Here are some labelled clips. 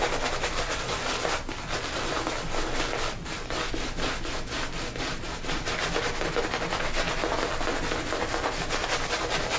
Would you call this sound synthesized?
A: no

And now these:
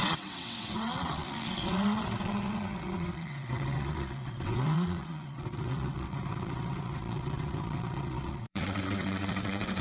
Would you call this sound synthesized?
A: yes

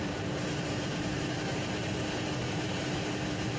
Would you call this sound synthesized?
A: yes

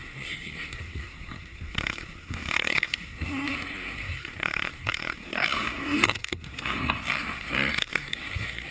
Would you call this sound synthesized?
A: yes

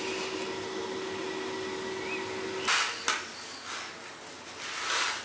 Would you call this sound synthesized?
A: no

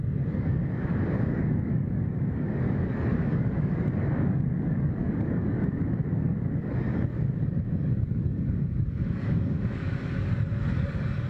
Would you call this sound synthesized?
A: yes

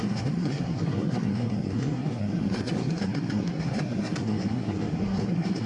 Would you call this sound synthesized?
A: yes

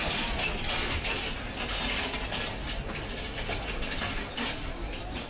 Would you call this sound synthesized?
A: no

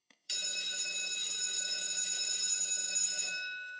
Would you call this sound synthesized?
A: yes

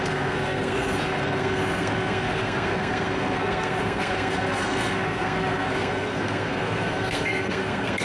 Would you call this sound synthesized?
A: yes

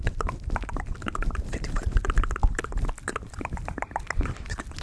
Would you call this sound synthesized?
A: no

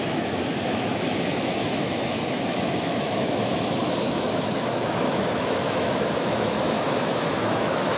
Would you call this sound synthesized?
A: yes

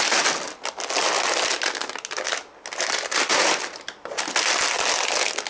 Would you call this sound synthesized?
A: no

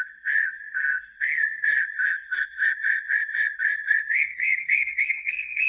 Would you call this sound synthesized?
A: yes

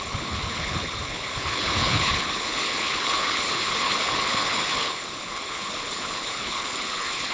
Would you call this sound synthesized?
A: yes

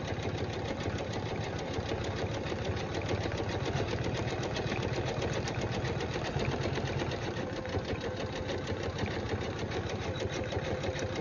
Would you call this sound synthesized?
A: no